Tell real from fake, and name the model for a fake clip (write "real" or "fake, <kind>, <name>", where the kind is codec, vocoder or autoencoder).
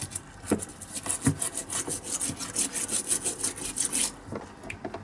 real